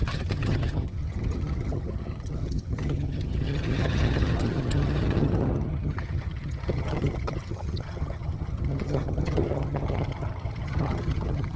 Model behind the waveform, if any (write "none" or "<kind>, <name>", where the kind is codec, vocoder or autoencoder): vocoder, HiFi-GAN